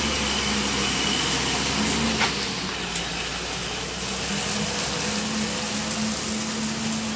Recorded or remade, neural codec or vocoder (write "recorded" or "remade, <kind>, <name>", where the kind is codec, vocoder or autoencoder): recorded